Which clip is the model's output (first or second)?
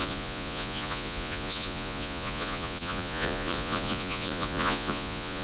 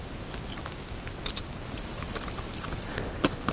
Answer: first